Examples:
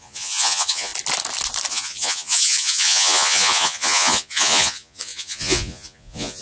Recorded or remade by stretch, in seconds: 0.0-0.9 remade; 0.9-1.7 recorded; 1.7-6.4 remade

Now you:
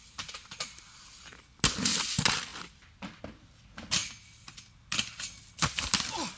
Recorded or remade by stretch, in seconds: 0.0-6.4 recorded

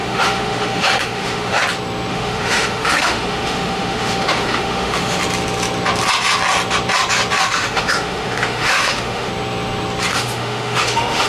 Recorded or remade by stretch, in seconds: 0.0-1.6 remade; 1.6-2.1 recorded; 2.1-5.2 remade; 5.2-7.4 recorded; 7.4-9.3 remade; 9.3-10.1 recorded; 10.1-11.3 remade

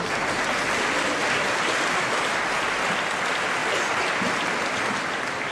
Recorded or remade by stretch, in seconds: 0.0-5.5 recorded

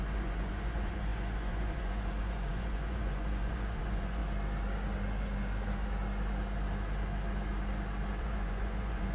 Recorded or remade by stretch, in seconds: 0.0-4.2 remade; 4.2-8.2 recorded; 8.2-9.1 remade

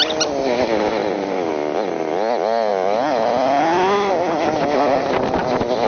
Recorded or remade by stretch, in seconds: 0.0-5.9 recorded